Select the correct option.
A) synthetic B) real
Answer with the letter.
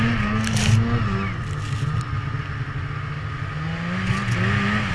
B